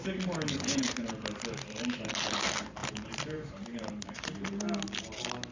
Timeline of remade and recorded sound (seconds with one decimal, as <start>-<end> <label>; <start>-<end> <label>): 0.0-2.8 recorded; 2.8-4.1 remade; 4.1-5.5 recorded